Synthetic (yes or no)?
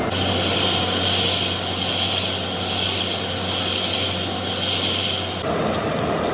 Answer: no